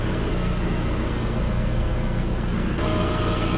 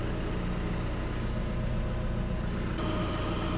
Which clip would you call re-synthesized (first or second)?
first